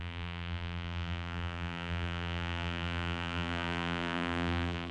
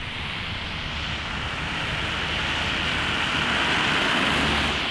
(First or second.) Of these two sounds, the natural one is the second